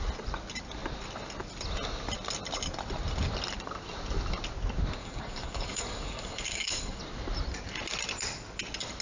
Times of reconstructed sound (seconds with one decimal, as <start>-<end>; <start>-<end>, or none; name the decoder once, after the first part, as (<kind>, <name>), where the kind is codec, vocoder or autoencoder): 5.0-7.0 (codec, DAC)